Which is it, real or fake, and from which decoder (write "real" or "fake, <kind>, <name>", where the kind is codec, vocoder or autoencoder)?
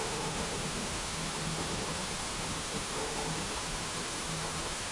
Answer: fake, autoencoder, DAC-VAE